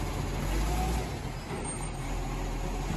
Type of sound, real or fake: real